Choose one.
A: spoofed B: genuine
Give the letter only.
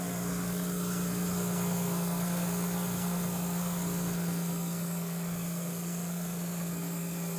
A